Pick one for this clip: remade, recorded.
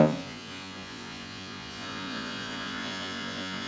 remade